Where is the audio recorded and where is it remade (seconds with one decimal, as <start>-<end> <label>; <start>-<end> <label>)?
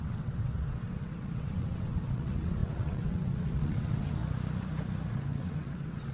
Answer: 0.0-4.2 remade; 4.2-5.1 recorded; 5.1-6.1 remade